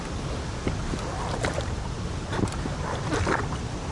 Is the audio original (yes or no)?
yes